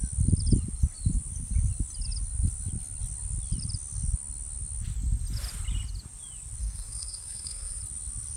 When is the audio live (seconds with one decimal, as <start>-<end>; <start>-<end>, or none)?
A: 0.0-6.6; 7.8-8.4